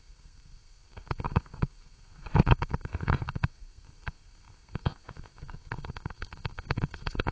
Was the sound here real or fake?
fake